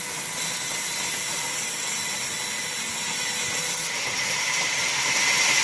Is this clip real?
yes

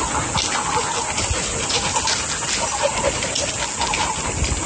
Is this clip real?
yes